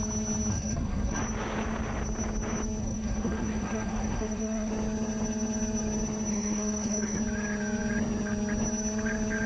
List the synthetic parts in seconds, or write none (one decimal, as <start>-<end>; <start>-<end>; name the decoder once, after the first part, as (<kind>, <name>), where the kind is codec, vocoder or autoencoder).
0.5-1.2 (codec, SNAC); 2.8-4.7; 6.3-7.2